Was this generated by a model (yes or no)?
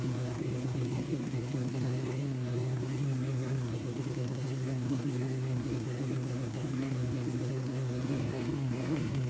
yes